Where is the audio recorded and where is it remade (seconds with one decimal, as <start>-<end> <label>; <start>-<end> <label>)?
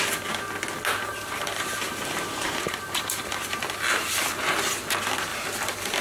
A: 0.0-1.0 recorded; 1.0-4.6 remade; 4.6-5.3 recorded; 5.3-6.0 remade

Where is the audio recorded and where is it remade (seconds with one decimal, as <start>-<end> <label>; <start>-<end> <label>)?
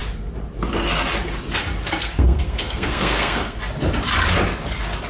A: 0.0-2.0 recorded; 2.0-3.6 remade; 3.6-5.1 recorded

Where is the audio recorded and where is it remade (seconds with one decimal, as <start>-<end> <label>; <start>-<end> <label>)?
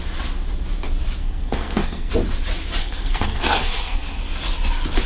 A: 0.0-1.2 recorded; 1.2-2.1 remade; 2.1-2.8 recorded; 2.8-4.2 remade; 4.2-5.1 recorded